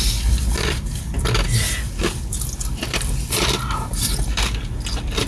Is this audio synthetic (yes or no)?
no